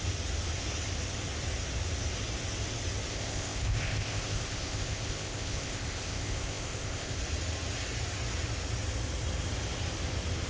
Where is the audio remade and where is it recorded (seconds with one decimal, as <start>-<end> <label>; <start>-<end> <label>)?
0.0-3.1 recorded; 3.1-7.2 remade; 7.2-10.5 recorded